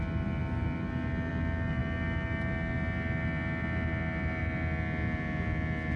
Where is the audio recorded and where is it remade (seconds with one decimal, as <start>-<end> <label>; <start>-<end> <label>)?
0.0-6.0 recorded